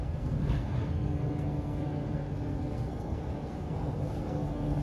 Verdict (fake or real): fake